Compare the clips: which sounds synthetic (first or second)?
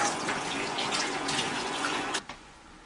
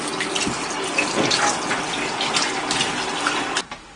first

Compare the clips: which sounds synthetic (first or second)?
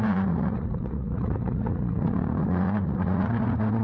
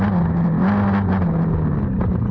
first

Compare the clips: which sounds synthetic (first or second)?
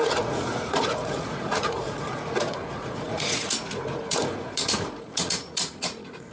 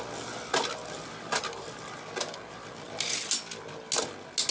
first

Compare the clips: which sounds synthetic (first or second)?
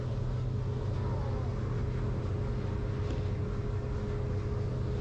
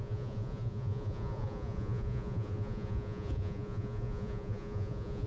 second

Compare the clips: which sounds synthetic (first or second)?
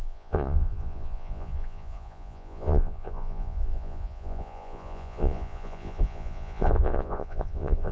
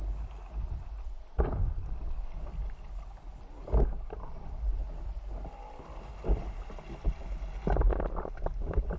first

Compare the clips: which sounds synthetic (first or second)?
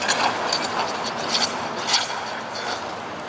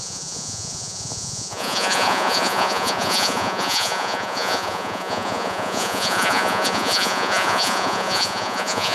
second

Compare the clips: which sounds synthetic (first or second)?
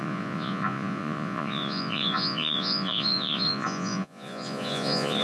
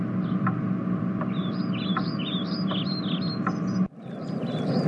first